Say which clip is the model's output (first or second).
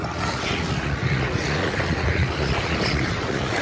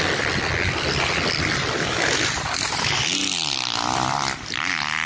first